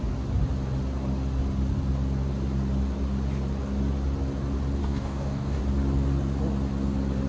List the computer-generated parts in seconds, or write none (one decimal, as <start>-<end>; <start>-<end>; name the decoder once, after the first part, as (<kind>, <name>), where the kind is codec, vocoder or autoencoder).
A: 4.8-5.6 (codec, DAC)